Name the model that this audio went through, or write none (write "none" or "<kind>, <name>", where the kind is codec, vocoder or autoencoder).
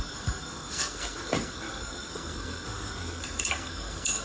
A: codec, SNAC